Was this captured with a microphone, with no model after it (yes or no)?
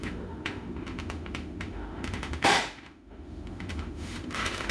no